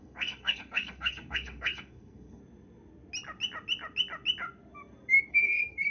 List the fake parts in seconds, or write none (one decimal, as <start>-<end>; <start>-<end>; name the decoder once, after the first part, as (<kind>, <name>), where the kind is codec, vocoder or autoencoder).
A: 0.0-2.4 (codec, SNAC); 5.3-5.9

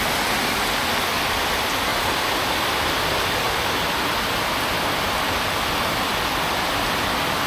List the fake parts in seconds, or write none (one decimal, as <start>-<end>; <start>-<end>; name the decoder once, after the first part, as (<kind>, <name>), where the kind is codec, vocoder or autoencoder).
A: none